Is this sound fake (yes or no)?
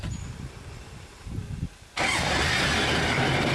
no